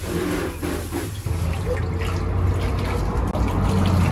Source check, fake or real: real